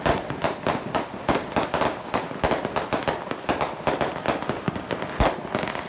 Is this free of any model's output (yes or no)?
yes